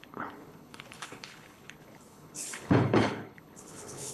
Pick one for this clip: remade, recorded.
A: remade